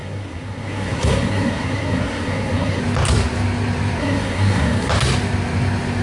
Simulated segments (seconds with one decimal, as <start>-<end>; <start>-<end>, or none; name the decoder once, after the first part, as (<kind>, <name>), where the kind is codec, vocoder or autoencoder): 0.0-2.8 (codec, SNAC); 4.0-4.9